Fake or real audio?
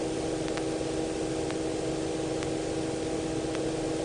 real